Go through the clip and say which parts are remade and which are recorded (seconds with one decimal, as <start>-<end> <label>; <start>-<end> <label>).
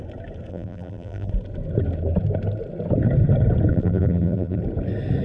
0.0-0.5 recorded; 0.5-1.3 remade; 1.3-3.7 recorded; 3.7-4.6 remade; 4.6-5.2 recorded